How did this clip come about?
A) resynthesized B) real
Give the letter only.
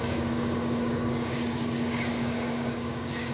A